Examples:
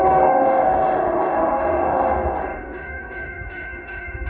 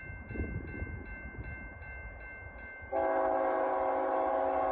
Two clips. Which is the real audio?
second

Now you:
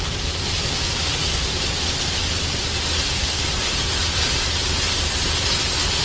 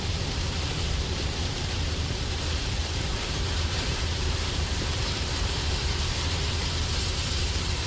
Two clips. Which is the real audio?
first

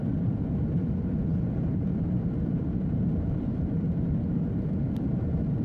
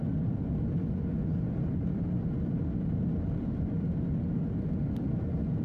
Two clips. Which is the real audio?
second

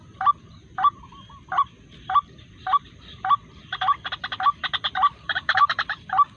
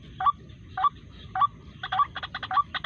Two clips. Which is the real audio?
second